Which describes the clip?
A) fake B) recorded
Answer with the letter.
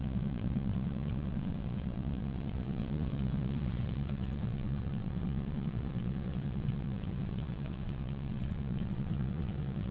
A